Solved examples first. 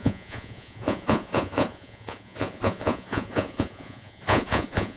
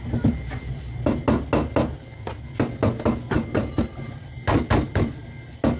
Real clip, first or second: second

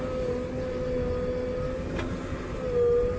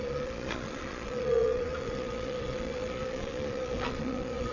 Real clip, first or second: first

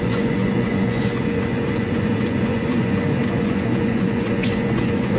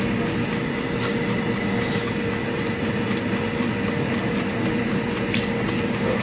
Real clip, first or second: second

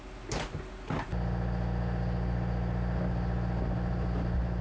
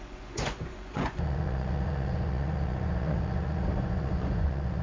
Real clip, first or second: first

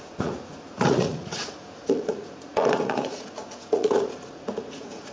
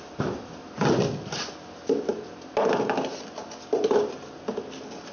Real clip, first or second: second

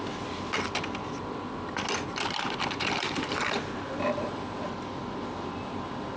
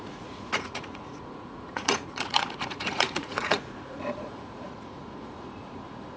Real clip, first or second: first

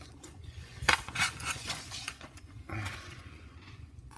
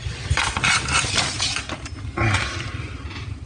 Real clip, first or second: second